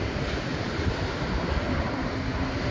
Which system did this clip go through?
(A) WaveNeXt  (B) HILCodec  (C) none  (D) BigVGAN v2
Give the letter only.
D